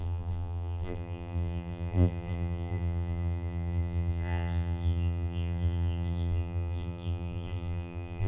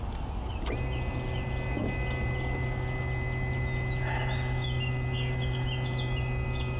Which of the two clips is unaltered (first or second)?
second